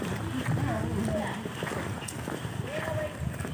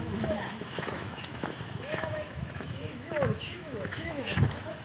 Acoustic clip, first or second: first